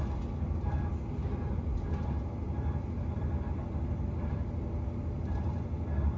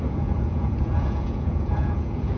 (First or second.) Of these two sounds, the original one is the first